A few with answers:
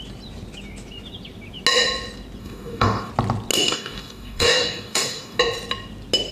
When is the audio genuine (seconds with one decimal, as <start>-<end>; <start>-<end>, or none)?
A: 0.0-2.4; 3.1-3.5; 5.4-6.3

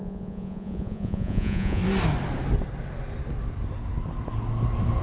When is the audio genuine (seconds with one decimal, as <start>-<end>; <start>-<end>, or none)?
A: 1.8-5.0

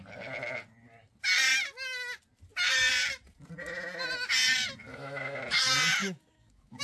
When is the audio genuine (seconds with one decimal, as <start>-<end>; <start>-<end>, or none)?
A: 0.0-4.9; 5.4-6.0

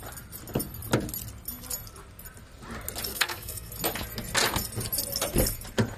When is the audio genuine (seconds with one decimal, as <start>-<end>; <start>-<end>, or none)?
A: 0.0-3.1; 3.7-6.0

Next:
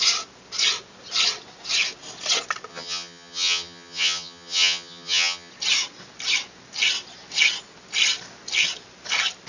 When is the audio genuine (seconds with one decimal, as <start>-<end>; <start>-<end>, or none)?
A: 0.0-2.7; 5.5-9.5

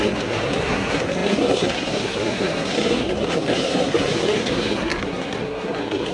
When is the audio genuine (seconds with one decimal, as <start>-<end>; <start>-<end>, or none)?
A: none

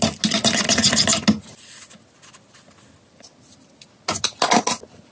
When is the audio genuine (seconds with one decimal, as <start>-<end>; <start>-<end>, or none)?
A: 0.0-5.1